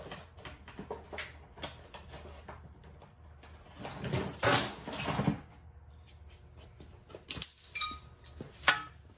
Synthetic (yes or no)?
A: no